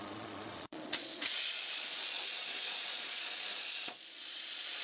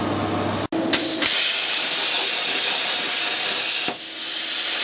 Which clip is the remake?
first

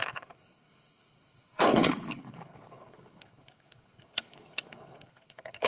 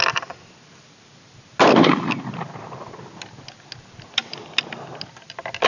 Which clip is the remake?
first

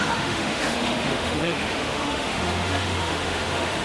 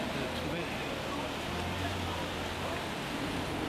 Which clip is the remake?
first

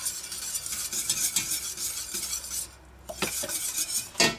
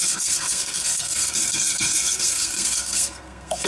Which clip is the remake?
second